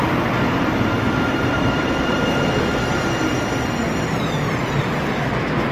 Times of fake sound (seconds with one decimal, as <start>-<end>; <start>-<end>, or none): 1.3-2.2